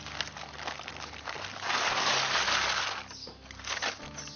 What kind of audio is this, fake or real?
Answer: real